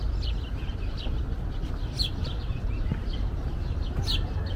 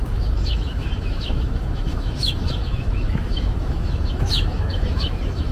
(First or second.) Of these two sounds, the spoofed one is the second